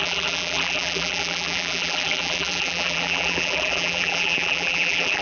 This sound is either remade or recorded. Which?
remade